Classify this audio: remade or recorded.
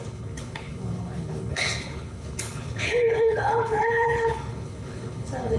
remade